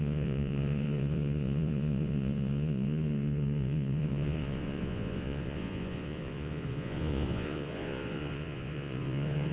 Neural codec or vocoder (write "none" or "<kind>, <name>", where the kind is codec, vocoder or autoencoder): vocoder, Vocos